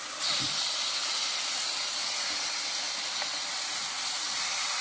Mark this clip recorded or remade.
recorded